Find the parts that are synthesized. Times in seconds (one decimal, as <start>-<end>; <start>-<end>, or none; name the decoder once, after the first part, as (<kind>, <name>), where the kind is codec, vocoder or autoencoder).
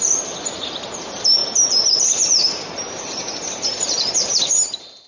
0.0-5.1 (vocoder, BigVGAN v2)